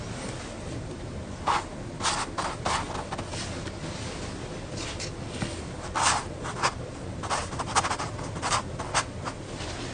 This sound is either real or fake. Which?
real